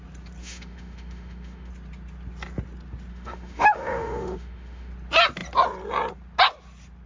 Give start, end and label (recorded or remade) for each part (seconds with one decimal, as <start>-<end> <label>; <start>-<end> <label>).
0.0-0.4 recorded; 0.4-1.7 remade; 1.7-3.1 recorded; 3.1-4.9 remade; 4.9-7.1 recorded